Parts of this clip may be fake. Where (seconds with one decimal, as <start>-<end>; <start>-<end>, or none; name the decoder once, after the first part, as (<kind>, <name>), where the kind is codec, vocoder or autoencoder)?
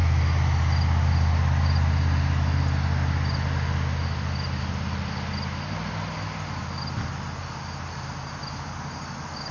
none